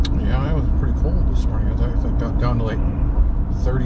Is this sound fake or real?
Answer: fake